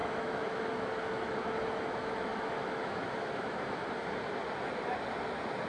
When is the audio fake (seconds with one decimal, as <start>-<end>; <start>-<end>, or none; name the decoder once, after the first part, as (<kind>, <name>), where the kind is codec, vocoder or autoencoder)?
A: 0.0-3.8 (autoencoder, DAC-VAE)